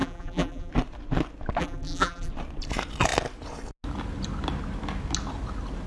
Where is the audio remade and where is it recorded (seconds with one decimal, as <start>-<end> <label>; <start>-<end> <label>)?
0.0-0.7 remade; 0.7-1.6 recorded; 1.6-2.3 remade; 2.3-5.9 recorded